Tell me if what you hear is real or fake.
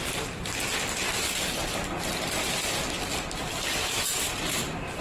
real